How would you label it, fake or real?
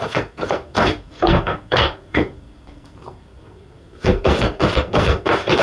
fake